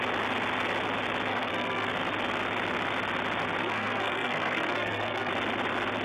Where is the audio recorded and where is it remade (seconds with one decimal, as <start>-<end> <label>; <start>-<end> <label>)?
0.0-1.3 recorded; 1.3-1.9 remade; 1.9-3.6 recorded; 3.6-5.3 remade; 5.3-6.0 recorded